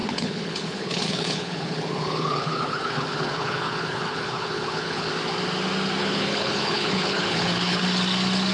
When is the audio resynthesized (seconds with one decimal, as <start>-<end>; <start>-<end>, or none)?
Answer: 0.0-5.1; 6.0-7.8